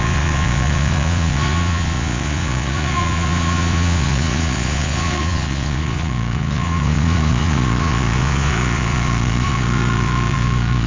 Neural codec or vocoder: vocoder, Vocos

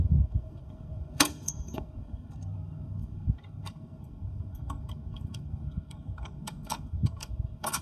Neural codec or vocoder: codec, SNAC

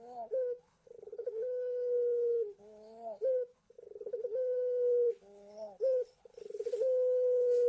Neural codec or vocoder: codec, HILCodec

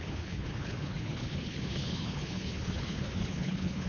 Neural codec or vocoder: codec, HILCodec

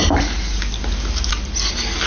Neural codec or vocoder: none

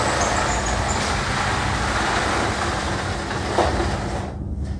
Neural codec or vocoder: none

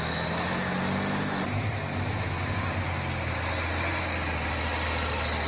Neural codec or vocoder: none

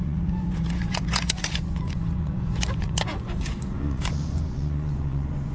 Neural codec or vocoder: vocoder, Vocos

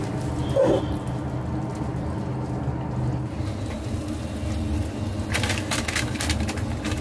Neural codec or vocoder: none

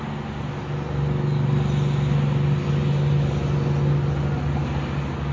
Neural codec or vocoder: none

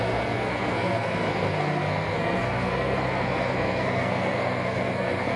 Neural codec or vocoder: codec, SNAC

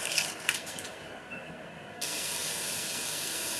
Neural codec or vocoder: codec, SNAC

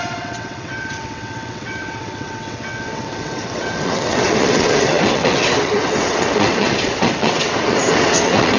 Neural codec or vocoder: vocoder, WaveNeXt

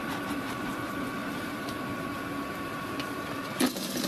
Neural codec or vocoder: none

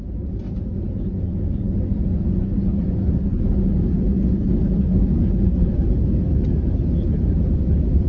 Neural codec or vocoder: none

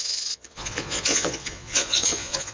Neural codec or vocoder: vocoder, Vocos